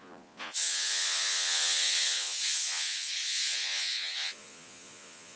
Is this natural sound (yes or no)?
no